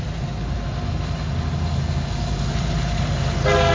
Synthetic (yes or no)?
no